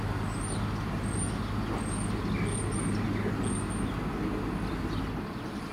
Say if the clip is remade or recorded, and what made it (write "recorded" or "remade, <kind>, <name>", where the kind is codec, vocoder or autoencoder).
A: recorded